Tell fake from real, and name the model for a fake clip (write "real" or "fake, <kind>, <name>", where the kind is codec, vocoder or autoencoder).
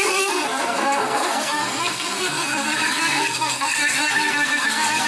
fake, codec, SNAC